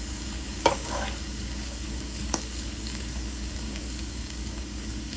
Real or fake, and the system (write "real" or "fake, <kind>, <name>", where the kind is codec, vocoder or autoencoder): fake, codec, DAC